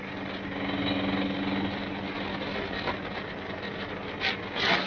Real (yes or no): yes